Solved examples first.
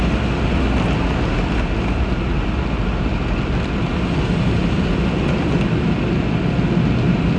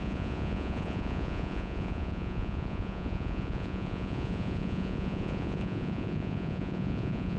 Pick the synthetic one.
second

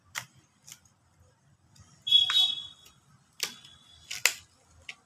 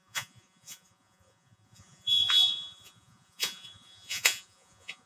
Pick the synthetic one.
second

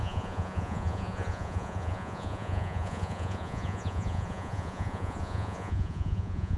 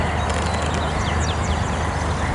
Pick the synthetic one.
first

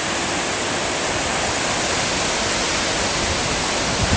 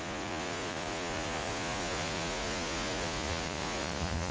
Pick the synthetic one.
second